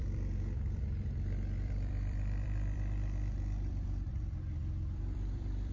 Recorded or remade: remade